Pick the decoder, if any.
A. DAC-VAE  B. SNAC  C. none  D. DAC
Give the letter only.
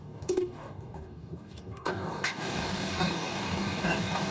D